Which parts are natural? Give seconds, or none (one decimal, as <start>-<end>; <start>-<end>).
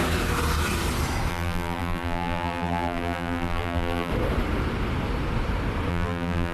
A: 0.0-1.3; 4.1-5.9